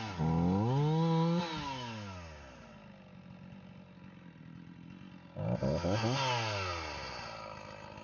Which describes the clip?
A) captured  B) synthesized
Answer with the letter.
A